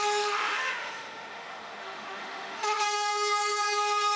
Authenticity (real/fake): fake